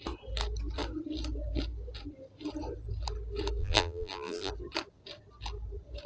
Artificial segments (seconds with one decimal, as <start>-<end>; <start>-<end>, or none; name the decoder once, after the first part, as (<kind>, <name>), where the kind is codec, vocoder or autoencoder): 3.6-4.5 (vocoder, BigVGAN v2)